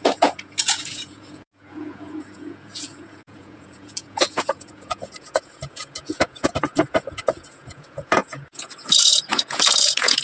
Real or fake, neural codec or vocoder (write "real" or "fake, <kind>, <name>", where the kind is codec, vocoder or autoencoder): fake, vocoder, Vocos